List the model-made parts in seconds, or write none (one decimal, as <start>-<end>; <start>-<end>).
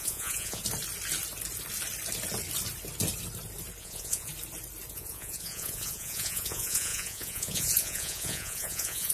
0.0-0.6; 3.8-4.3; 4.9-9.1